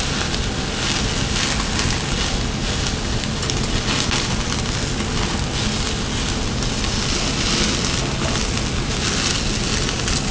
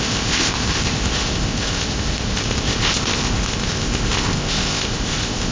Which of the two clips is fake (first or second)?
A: second